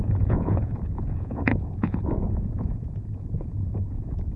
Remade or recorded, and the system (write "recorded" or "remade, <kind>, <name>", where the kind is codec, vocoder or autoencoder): remade, vocoder, Vocos